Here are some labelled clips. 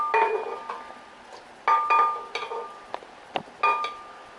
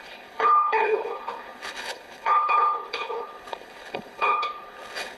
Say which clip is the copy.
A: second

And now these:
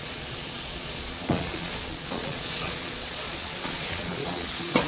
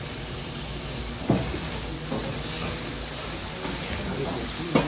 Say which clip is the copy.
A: first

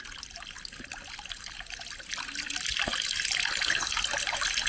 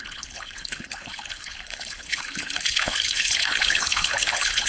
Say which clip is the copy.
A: second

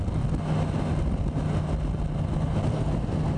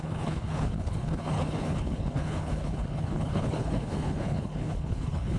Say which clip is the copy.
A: second